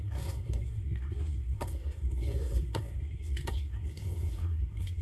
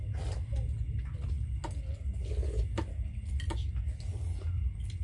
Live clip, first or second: second